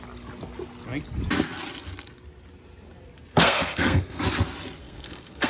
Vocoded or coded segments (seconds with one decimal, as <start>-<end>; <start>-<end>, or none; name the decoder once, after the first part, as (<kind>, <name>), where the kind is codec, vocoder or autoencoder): 3.3-4.2 (codec, SNAC); 4.8-5.5